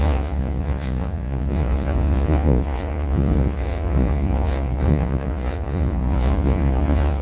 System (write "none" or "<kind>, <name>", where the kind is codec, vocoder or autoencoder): vocoder, Vocos